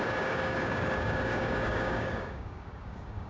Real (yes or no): no